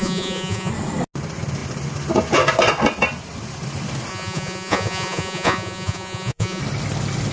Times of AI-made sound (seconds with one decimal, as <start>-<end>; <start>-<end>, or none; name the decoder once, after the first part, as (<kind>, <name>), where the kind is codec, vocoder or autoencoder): 0.0-0.7 (vocoder, Vocos); 4.1-6.6